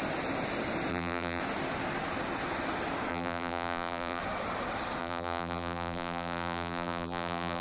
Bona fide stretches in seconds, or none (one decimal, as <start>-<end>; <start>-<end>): 0.0-0.9; 1.4-3.1; 4.2-5.0